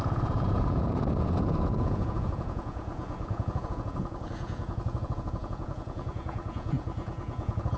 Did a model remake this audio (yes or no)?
yes